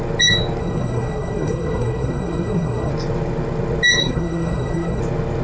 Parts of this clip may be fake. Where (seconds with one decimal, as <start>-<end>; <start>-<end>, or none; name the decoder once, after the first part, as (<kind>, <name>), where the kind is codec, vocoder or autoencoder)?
0.6-2.9 (codec, SNAC); 4.0-5.0